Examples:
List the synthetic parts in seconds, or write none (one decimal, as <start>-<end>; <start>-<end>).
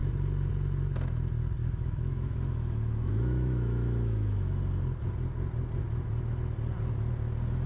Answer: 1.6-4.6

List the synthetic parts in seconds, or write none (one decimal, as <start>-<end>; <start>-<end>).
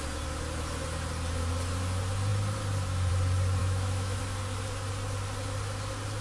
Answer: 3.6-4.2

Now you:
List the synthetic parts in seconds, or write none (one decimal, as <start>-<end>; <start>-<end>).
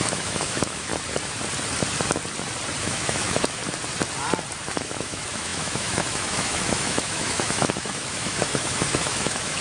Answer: 0.0-0.9; 2.8-3.6; 4.7-9.6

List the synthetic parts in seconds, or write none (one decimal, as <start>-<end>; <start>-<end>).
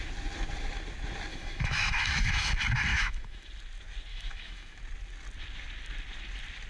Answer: 1.3-2.5; 2.9-3.5; 4.1-4.8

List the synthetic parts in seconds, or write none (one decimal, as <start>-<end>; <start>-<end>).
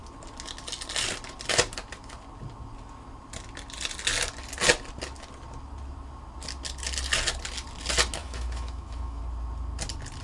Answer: 8.2-9.2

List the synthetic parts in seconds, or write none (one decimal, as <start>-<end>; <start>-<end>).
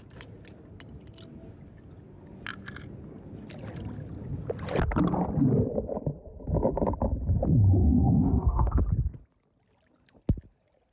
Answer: 7.8-8.8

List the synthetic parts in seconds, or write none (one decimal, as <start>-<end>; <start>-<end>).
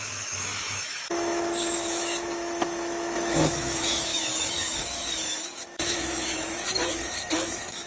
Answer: 0.0-7.9